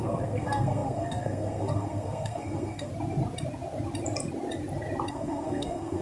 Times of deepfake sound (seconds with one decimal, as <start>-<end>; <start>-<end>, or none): 0.0-2.9; 5.1-6.0